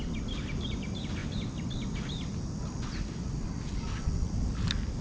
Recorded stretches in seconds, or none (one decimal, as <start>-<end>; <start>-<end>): 0.0-5.0